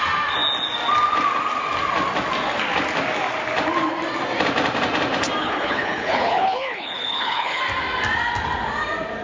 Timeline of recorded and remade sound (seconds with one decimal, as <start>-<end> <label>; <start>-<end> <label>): 0.0-5.4 recorded; 5.4-7.6 remade; 7.6-9.2 recorded

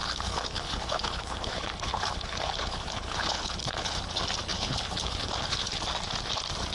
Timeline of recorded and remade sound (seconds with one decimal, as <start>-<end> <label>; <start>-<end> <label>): 0.0-4.0 remade; 4.0-4.5 recorded; 4.5-5.8 remade; 5.8-6.7 recorded

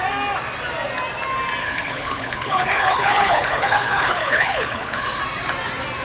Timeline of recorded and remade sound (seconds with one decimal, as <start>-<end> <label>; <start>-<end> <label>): 0.0-1.6 recorded; 1.6-5.2 remade; 5.2-6.0 recorded